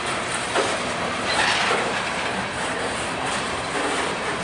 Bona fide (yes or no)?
no